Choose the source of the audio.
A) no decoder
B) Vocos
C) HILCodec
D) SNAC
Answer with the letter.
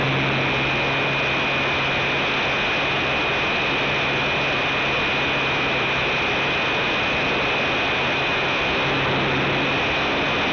A